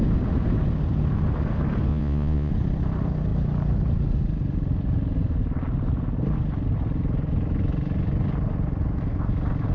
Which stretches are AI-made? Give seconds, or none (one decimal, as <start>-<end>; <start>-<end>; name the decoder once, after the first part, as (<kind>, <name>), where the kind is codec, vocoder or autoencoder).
1.9-2.5 (vocoder, Vocos)